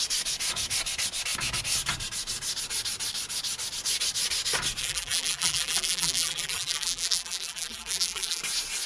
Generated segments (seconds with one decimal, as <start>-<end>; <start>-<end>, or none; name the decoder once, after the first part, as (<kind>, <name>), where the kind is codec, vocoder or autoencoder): 4.8-8.4 (vocoder, BigVGAN v2)